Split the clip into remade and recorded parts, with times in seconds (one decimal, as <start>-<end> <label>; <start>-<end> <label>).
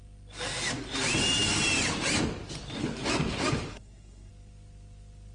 0.0-3.7 recorded; 3.7-4.3 remade; 4.3-5.3 recorded